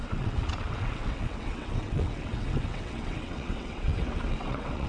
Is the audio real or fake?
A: fake